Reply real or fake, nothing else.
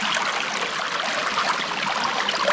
real